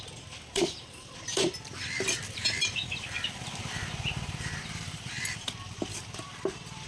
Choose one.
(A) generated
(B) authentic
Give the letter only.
A